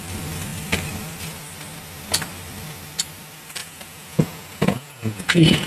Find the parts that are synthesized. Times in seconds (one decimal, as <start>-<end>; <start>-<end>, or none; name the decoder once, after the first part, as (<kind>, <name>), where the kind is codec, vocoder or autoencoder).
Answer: 3.6-5.7 (vocoder, Vocos)